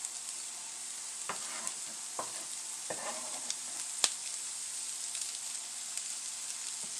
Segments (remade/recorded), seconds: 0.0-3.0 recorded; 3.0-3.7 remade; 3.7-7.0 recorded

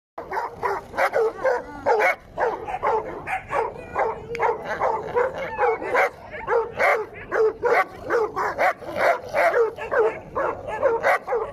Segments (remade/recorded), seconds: 0.0-6.9 recorded; 6.9-8.2 remade; 8.2-11.5 recorded

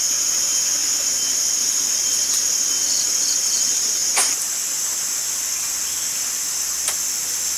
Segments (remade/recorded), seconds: 0.0-7.6 recorded

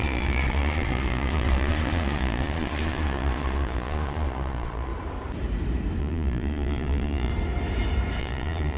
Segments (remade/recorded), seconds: 0.0-4.9 remade; 4.9-6.0 recorded; 6.0-7.3 remade; 7.3-8.2 recorded; 8.2-8.8 remade

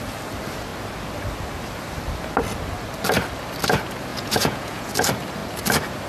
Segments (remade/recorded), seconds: 0.0-4.1 recorded; 4.1-4.9 remade; 4.9-6.1 recorded

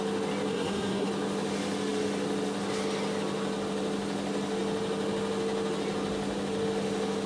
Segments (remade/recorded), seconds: 0.0-0.5 recorded; 0.5-1.1 remade; 1.1-7.3 recorded

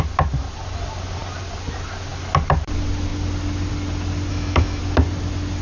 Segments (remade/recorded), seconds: 0.0-4.3 recorded; 4.3-4.8 remade; 4.8-5.6 recorded

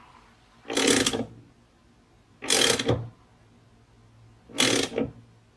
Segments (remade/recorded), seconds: 0.0-5.6 recorded